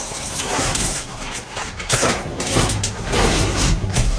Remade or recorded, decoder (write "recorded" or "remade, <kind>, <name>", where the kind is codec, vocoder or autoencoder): remade, codec, SNAC